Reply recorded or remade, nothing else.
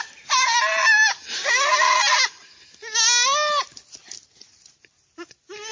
recorded